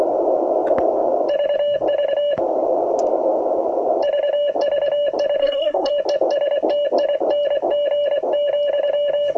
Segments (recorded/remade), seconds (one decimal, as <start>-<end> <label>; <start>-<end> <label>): 0.0-5.4 recorded; 5.4-5.9 remade; 5.9-9.4 recorded